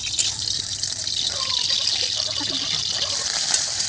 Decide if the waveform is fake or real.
real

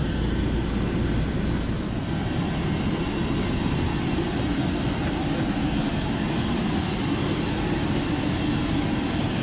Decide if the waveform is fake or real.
real